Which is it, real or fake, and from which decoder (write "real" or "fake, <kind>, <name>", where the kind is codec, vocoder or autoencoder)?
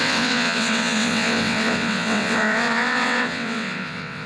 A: fake, vocoder, WaveNeXt